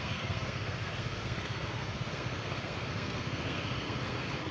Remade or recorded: remade